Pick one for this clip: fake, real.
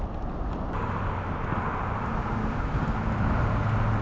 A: real